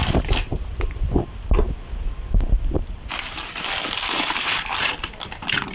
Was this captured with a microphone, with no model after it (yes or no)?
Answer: yes